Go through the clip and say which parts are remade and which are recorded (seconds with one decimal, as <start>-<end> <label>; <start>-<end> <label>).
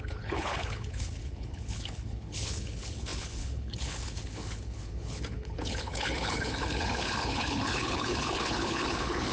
0.0-9.3 remade